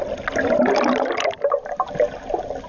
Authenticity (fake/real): real